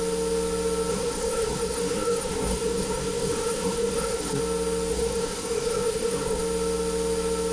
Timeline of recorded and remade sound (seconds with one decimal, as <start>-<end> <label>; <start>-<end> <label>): 0.0-0.9 recorded; 0.9-4.4 remade; 4.4-4.9 recorded; 4.9-6.4 remade; 6.4-7.5 recorded